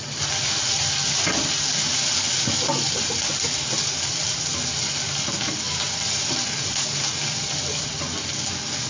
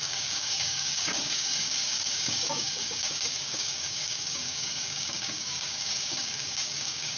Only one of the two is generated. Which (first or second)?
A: second